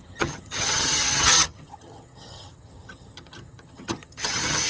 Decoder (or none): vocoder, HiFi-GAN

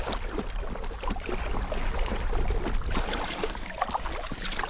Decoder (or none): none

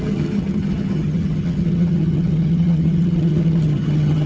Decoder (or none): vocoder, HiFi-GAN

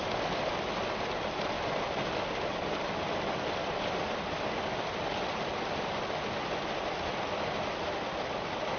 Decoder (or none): none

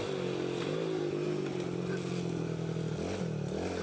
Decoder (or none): none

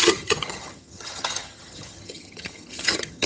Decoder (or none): vocoder, HiFi-GAN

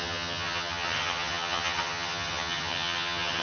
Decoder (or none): vocoder, HiFi-GAN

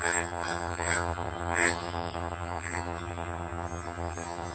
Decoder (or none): vocoder, HiFi-GAN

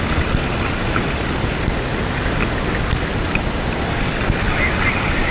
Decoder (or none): none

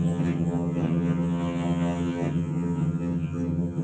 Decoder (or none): vocoder, HiFi-GAN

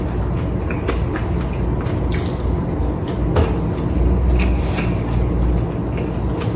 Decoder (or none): none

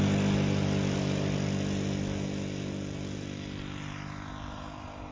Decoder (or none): none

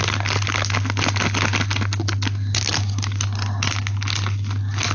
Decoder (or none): none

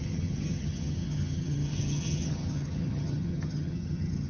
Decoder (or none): vocoder, HiFi-GAN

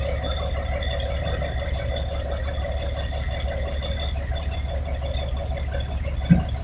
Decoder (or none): none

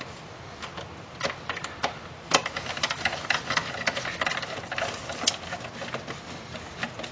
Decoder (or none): none